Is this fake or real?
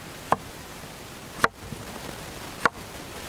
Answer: real